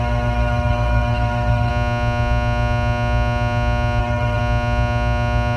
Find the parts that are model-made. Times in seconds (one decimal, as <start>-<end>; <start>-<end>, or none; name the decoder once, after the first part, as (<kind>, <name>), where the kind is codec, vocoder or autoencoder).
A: 0.0-1.7 (codec, SNAC); 4.0-4.4